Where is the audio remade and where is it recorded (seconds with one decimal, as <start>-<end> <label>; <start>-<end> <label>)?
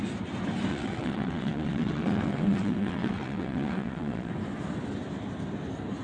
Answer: 0.0-0.7 recorded; 0.7-4.3 remade; 4.3-6.0 recorded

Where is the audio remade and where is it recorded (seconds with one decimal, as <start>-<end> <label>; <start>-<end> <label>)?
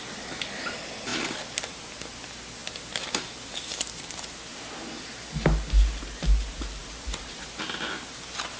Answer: 0.0-8.6 recorded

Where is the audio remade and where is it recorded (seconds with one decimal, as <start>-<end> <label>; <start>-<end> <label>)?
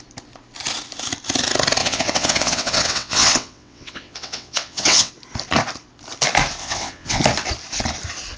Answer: 0.0-1.8 recorded; 1.8-5.1 remade; 5.1-6.6 recorded; 6.6-7.2 remade; 7.2-8.4 recorded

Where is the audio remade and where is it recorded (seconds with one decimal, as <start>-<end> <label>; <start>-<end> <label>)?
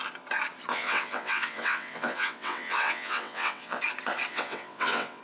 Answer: 0.0-0.7 recorded; 0.7-3.8 remade; 3.8-4.3 recorded; 4.3-5.2 remade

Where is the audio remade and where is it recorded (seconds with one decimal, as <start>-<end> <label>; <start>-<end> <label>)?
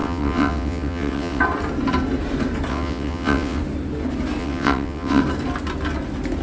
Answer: 0.0-1.4 remade; 1.4-2.7 recorded; 2.7-3.6 remade; 3.6-4.4 recorded; 4.4-5.2 remade; 5.2-6.4 recorded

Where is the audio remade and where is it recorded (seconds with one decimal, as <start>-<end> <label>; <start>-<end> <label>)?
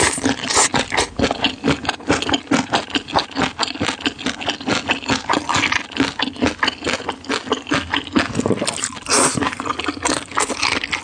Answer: 0.0-11.0 recorded